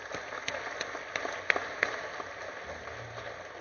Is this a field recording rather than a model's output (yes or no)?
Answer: yes